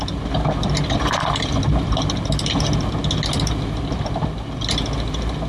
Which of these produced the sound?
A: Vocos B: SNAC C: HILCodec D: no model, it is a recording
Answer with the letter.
D